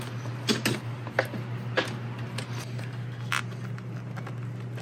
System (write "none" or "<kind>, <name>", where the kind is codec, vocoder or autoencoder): none